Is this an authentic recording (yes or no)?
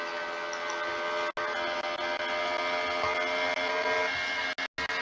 yes